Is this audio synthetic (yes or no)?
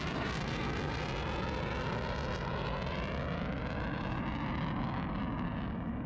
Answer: no